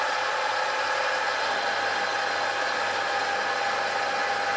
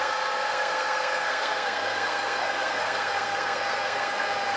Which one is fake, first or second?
second